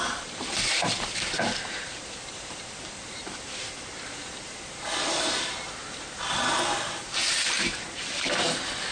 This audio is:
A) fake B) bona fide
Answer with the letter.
A